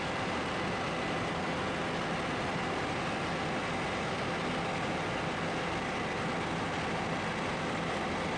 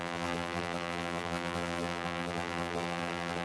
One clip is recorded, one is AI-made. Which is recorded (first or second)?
first